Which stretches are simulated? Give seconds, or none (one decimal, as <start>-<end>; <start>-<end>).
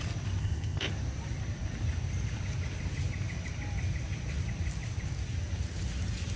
0.4-0.9